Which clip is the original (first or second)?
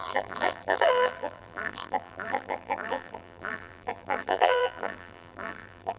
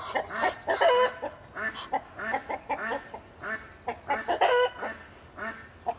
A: second